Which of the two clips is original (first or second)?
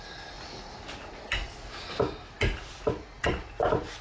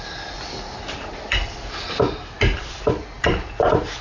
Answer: first